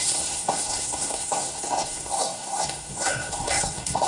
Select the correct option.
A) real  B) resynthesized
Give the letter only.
B